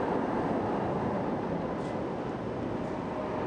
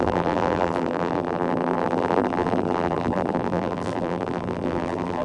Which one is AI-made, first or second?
second